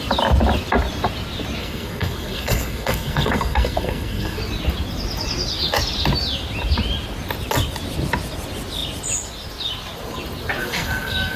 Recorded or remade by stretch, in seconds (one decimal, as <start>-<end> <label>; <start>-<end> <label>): 0.0-1.6 recorded; 1.6-4.4 remade; 4.4-10.6 recorded; 10.6-11.4 remade